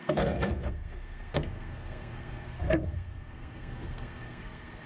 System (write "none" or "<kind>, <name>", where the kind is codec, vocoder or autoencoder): codec, SNAC